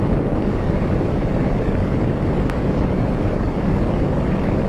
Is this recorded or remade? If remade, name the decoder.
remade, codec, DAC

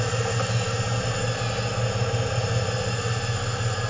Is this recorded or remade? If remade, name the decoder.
recorded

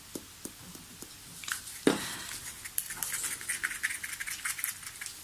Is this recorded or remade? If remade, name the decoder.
recorded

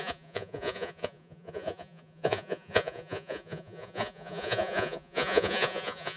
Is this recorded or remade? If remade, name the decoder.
remade, vocoder, Vocos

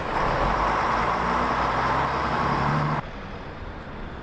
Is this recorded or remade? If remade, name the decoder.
remade, vocoder, BigVGAN v2